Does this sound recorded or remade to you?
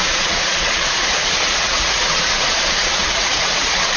remade